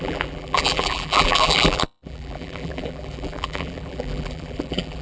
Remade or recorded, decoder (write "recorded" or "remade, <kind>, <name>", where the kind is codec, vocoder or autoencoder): remade, vocoder, BigVGAN v2